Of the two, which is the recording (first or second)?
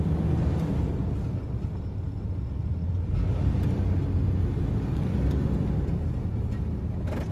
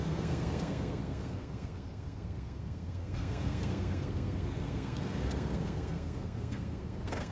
first